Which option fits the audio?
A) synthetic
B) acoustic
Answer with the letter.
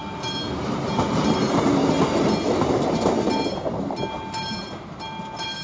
B